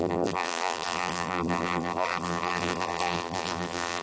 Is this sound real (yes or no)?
no